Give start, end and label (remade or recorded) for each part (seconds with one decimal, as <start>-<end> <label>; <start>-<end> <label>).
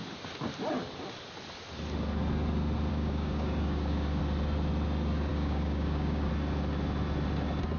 0.0-2.9 recorded; 2.9-4.2 remade; 4.2-5.3 recorded; 5.3-6.3 remade; 6.3-7.8 recorded